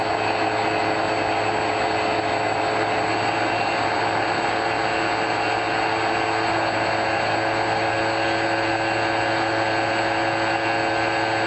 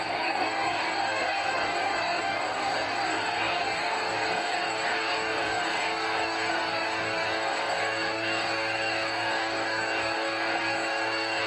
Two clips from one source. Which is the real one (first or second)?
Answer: first